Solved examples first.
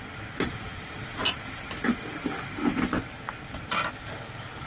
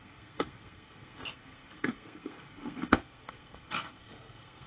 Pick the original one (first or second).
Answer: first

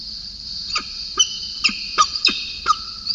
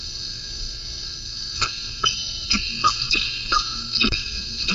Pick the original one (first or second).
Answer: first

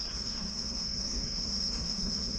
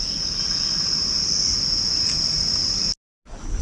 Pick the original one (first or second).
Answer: second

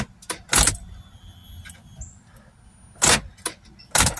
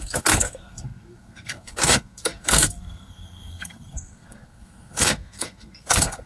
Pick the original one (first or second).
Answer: first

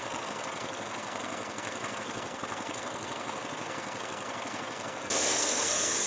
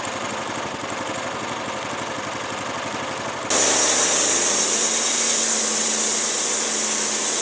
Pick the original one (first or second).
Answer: second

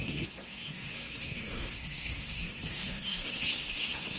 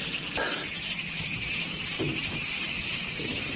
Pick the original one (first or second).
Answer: second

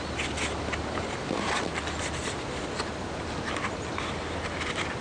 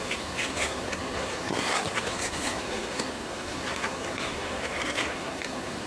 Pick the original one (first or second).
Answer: first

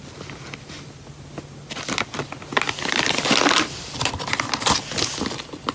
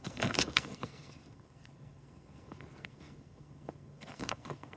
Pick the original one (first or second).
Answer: first